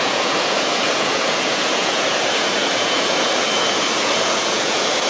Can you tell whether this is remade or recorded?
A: remade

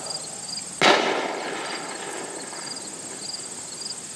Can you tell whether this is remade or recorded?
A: recorded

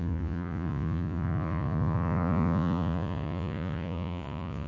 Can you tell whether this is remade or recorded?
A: remade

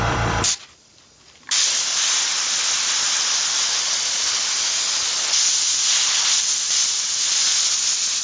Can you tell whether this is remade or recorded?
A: recorded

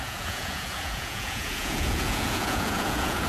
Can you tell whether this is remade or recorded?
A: remade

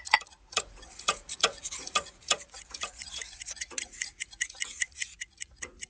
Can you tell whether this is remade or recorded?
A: remade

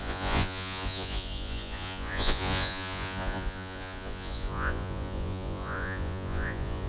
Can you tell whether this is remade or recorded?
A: remade